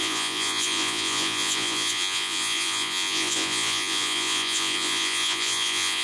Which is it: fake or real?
fake